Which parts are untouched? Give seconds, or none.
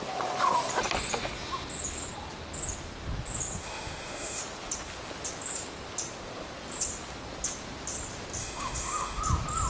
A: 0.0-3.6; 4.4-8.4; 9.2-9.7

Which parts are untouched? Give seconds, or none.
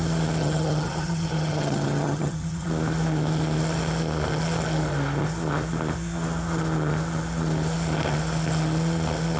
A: 0.0-0.4; 2.7-9.4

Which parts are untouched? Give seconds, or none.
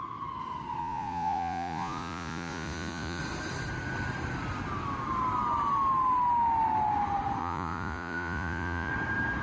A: 0.0-0.8; 3.2-7.4; 8.9-9.4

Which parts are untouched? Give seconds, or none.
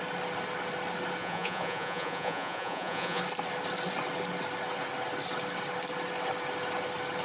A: 0.0-1.2; 3.2-7.2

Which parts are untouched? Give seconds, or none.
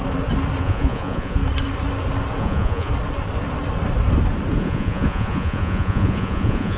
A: 0.0-0.6; 1.4-2.4; 2.9-4.6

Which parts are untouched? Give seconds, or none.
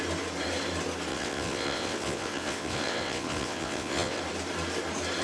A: 0.0-1.1; 4.2-5.2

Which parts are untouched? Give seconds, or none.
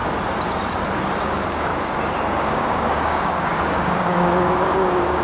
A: 0.0-1.2; 1.7-2.4